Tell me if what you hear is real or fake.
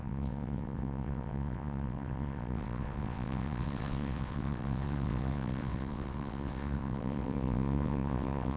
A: fake